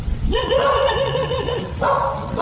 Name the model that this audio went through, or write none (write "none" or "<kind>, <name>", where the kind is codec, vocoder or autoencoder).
vocoder, WaveNeXt